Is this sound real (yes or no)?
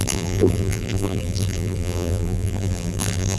no